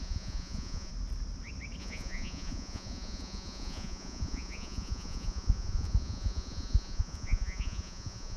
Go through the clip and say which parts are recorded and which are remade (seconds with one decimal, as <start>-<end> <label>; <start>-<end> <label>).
0.0-0.9 remade; 0.9-1.8 recorded; 1.8-8.4 remade